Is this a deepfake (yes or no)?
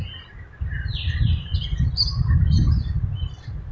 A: no